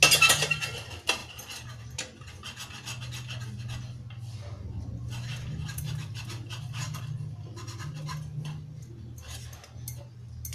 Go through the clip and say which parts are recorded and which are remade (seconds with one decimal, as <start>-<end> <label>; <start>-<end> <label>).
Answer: 0.0-1.2 recorded; 1.2-1.9 remade; 1.9-10.5 recorded